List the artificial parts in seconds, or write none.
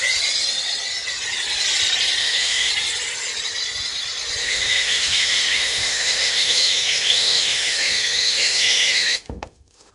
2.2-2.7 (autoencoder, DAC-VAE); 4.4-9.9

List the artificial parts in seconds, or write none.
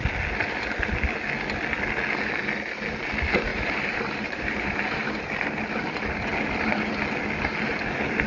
3.5-5.2 (vocoder, BigVGAN v2)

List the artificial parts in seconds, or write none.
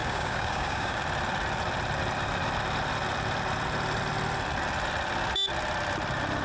0.0-1.0 (codec, DAC)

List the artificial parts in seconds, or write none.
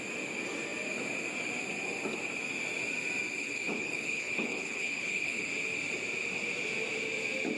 3.4-5.5 (codec, HILCodec)